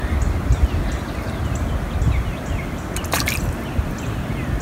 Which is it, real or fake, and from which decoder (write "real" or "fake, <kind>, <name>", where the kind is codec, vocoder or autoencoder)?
real